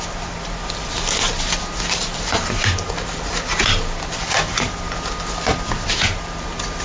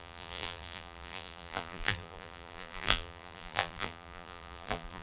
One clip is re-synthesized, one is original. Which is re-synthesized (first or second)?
second